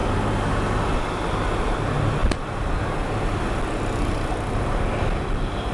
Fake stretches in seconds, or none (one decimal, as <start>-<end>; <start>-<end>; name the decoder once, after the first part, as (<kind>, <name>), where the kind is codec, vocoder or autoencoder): none